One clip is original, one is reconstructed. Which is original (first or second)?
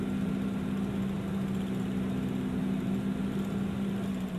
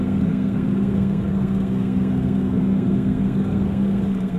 first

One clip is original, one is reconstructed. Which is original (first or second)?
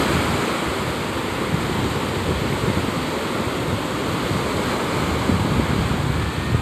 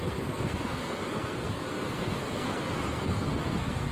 first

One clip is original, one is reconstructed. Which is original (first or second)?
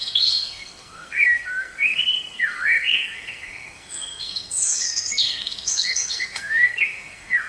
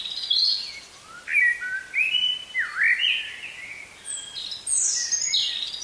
second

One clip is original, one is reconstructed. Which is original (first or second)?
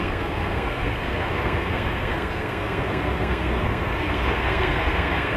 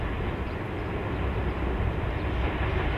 second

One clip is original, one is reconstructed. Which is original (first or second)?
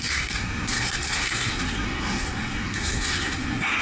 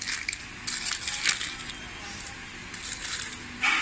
second